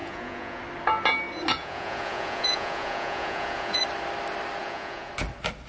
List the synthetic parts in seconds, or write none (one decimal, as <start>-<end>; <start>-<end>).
0.0-0.6; 1.6-3.8; 4.6-5.1